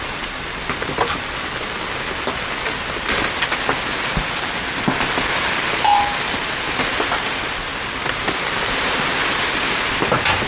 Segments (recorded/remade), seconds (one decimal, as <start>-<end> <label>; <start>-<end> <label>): 0.0-10.5 recorded

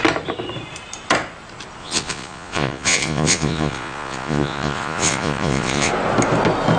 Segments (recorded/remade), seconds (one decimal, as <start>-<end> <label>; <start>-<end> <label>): 0.0-1.8 recorded; 1.8-5.9 remade; 5.9-6.8 recorded

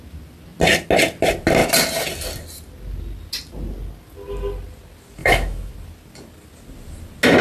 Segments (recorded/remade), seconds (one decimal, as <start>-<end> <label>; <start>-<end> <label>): 0.0-5.2 recorded; 5.2-5.7 remade; 5.7-7.4 recorded